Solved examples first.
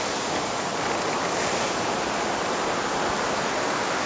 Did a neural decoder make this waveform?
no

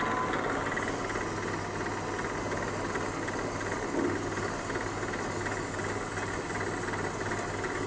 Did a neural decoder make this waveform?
no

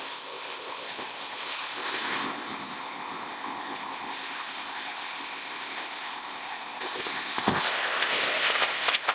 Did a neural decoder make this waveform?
yes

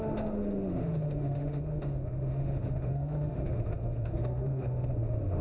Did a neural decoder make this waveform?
yes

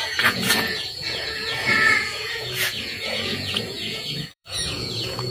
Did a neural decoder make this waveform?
yes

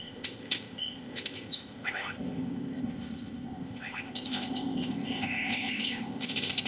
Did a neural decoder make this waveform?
yes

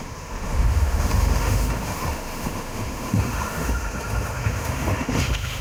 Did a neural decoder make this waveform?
yes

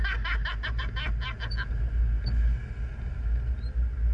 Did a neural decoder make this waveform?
no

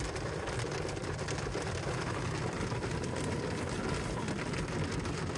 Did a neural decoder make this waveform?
no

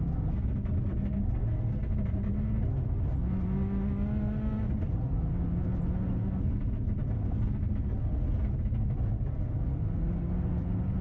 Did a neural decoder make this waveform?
no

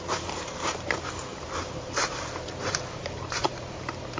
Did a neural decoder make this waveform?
yes